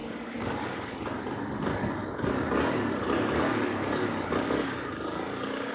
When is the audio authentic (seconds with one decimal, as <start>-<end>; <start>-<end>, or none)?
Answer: 1.0-2.0